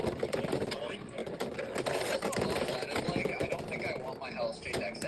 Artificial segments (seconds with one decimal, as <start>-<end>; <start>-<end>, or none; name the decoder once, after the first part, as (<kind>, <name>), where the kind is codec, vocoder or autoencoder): 0.0-1.2 (vocoder, BigVGAN v2); 1.9-5.1